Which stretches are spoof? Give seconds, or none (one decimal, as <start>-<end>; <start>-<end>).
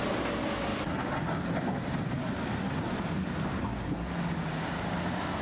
none